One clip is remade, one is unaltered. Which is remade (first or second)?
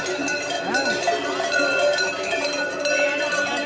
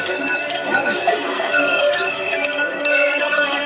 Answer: second